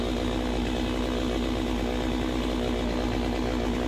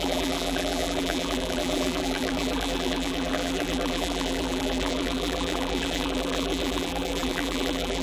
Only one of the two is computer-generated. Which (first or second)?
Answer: second